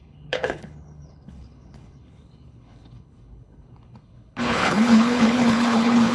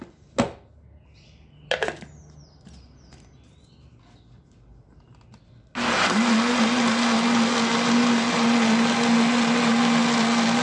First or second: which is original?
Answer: second